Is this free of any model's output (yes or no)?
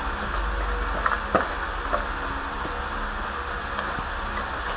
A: yes